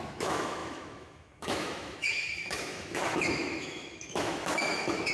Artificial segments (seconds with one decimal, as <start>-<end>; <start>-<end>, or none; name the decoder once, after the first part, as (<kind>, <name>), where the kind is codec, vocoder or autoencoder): 0.0-5.1 (autoencoder, DAC-VAE)